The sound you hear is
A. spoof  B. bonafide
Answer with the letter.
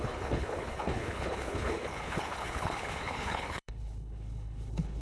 A